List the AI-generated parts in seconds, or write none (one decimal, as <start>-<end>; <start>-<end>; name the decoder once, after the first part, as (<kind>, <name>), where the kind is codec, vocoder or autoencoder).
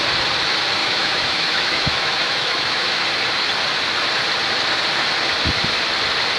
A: 0.8-3.0 (autoencoder, DAC-VAE)